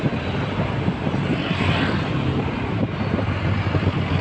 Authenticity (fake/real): real